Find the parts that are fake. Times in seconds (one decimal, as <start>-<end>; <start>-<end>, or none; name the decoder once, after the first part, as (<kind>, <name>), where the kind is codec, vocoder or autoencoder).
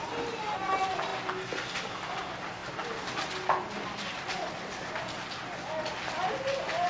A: none